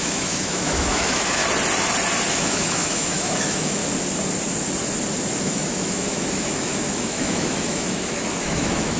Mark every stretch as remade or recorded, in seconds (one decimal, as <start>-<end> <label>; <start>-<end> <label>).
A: 0.0-1.4 remade; 1.4-2.3 recorded; 2.3-3.8 remade; 3.8-5.4 recorded; 5.4-9.0 remade